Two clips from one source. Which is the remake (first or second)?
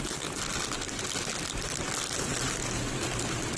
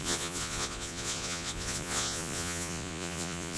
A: second